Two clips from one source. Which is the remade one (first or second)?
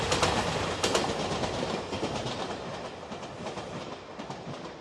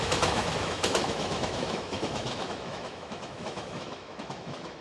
second